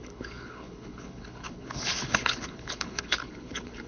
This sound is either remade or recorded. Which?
remade